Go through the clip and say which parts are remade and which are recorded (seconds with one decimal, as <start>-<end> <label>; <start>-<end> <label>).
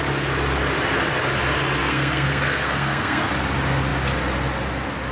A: 0.0-1.8 recorded; 1.8-3.3 remade; 3.3-5.1 recorded